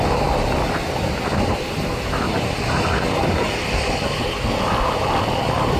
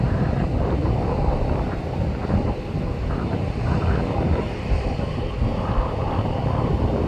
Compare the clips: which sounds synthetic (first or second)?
second